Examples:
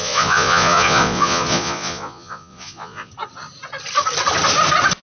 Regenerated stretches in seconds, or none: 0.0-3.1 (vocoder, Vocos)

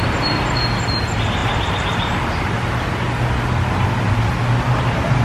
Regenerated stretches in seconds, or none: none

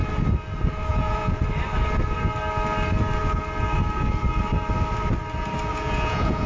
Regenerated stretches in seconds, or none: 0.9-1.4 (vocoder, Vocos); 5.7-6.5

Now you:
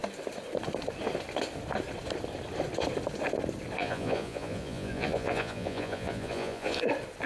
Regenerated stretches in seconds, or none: 3.8-6.8 (vocoder, Vocos)